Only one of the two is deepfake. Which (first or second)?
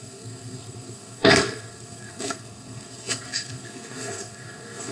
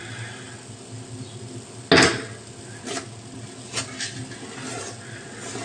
first